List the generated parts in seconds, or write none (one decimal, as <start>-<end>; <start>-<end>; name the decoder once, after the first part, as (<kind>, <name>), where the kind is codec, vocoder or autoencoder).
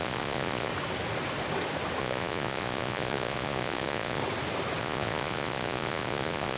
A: 0.0-0.7 (vocoder, Vocos); 2.0-4.2; 4.8-6.6